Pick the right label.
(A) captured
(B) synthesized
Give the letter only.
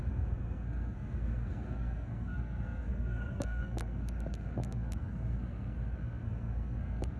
B